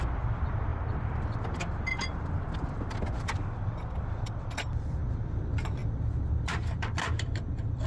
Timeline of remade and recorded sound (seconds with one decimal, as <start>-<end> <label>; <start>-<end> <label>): 0.0-0.7 remade; 0.7-4.0 recorded; 4.0-5.8 remade; 5.8-6.8 recorded; 6.8-7.9 remade